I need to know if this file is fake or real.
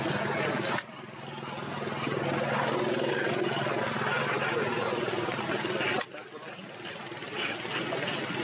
real